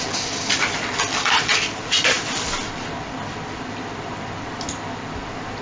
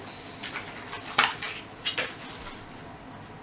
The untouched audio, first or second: second